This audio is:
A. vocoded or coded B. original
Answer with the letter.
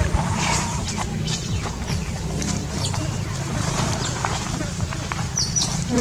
A